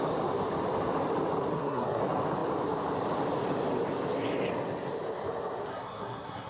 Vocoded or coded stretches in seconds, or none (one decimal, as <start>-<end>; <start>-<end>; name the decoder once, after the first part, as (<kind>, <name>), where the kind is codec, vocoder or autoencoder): 1.5-2.0 (codec, SNAC); 5.7-6.5